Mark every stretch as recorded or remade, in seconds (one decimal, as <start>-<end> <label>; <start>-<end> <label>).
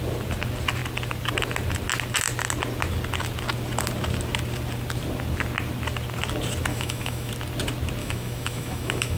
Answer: 0.0-6.7 recorded; 6.7-7.3 remade; 7.3-8.0 recorded; 8.0-9.2 remade